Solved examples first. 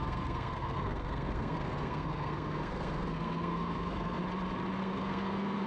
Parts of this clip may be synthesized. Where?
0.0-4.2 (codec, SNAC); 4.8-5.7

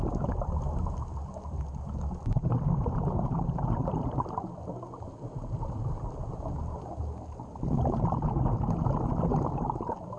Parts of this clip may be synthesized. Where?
none